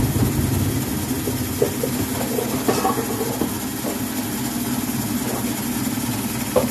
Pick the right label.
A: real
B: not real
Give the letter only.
A